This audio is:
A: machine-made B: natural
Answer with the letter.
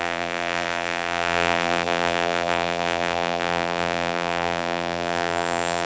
A